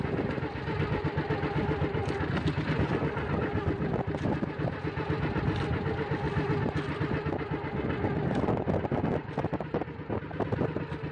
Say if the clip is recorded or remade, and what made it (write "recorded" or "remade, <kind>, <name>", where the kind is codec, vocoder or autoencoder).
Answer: recorded